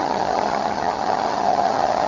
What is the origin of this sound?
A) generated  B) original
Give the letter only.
A